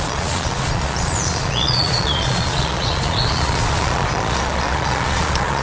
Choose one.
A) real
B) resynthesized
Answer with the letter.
B